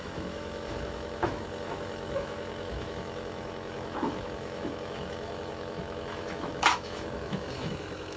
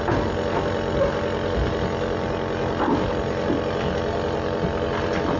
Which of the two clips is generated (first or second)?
first